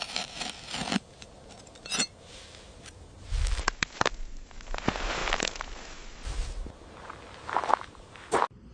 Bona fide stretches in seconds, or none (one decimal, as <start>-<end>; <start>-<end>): 0.0-8.7